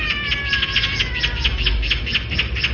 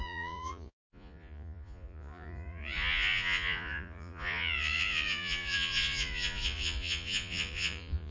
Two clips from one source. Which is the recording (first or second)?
first